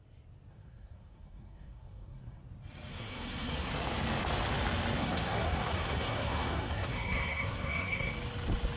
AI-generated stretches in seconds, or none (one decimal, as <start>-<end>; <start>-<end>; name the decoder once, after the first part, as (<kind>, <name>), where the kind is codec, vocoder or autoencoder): 0.5-2.4 (codec, SNAC); 2.9-3.7; 5.0-8.1